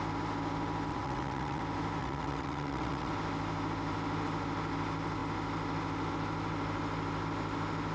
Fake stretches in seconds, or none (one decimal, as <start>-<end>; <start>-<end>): 0.9-1.6; 2.0-3.1